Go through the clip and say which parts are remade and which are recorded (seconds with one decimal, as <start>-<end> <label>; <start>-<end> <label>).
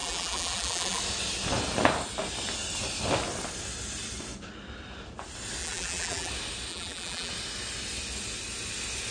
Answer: 0.0-1.0 remade; 1.0-5.6 recorded; 5.6-6.3 remade; 6.3-6.7 recorded; 6.7-7.3 remade; 7.3-9.1 recorded